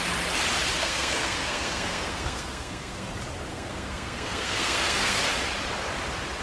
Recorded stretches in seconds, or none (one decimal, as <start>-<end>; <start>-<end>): 0.0-0.8; 3.1-3.5; 5.2-6.4